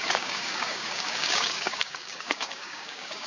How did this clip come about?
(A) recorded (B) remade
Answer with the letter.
B